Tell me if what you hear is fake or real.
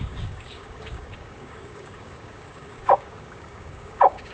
fake